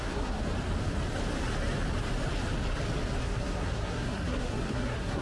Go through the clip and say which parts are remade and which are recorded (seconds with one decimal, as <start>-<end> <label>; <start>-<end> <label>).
0.0-0.4 remade; 0.4-3.2 recorded; 3.2-5.2 remade